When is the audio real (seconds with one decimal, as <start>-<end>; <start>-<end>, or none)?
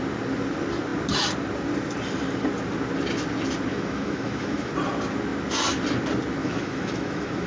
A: 0.0-3.7; 4.7-6.4